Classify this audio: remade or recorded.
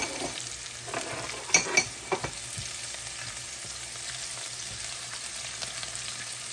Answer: recorded